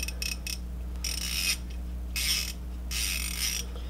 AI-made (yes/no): no